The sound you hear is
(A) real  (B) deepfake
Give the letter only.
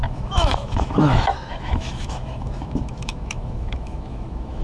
B